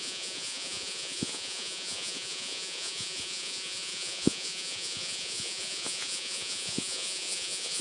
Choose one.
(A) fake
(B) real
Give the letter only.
A